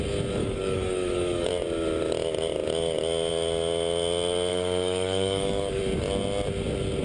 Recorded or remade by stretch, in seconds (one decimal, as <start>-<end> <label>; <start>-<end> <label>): 0.0-0.4 recorded; 0.4-1.5 remade; 1.5-4.5 recorded; 4.5-5.8 remade; 5.8-7.0 recorded